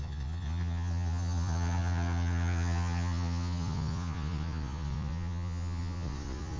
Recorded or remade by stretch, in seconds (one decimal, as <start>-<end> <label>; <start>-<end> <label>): 0.0-6.6 remade